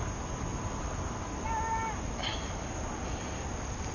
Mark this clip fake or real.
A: real